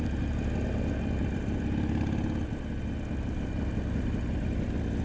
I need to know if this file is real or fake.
real